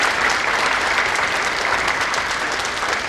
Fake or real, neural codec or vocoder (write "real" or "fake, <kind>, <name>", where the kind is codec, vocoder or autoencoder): fake, vocoder, BigVGAN v2